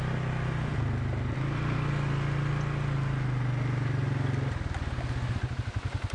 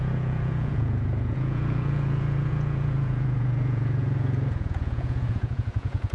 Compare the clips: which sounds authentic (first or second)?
first